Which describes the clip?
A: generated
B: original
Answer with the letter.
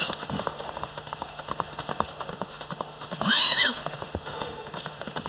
A